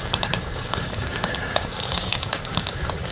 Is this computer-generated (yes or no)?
yes